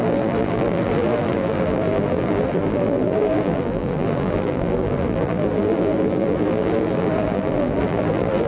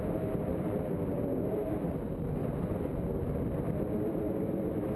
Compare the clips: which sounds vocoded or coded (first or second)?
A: first